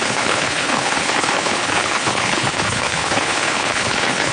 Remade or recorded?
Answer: remade